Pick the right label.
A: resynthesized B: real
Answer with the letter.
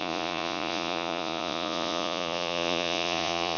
A